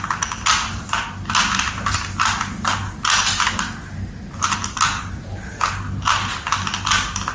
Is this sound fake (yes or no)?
no